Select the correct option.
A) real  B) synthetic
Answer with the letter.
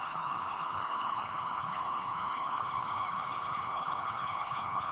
B